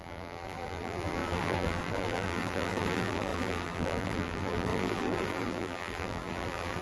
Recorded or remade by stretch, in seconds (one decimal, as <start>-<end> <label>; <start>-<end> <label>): 0.0-6.8 remade